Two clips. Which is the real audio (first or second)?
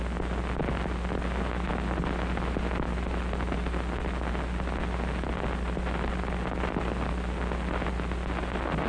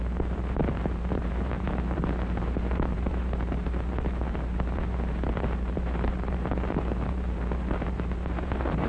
first